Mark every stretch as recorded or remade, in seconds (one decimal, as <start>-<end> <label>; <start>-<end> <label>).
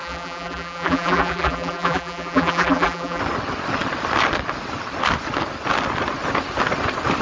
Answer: 0.0-3.2 remade; 3.2-7.2 recorded